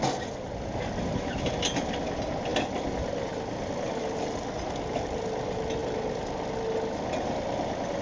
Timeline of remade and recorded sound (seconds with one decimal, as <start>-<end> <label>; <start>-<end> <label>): 0.0-8.0 recorded